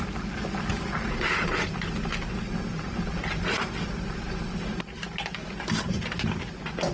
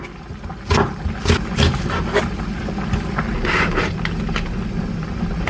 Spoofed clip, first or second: second